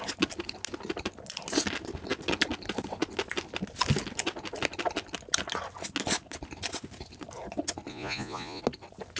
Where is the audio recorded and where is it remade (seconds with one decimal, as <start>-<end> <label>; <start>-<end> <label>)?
0.0-7.9 recorded; 7.9-8.6 remade; 8.6-9.2 recorded